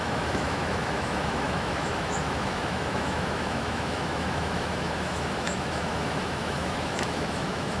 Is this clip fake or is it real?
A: fake